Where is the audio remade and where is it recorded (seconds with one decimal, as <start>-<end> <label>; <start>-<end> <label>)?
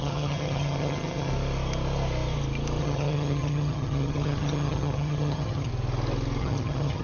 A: 0.0-1.3 remade; 1.3-2.8 recorded; 2.8-5.7 remade; 5.7-6.4 recorded; 6.4-7.0 remade